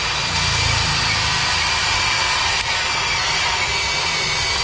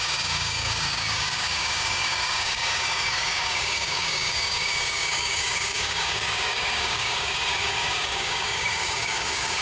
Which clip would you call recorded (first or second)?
first